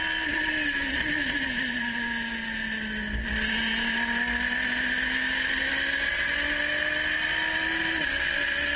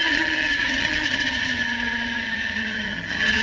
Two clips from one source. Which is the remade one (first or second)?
second